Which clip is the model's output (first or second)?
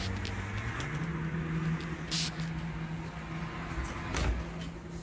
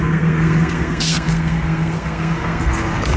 second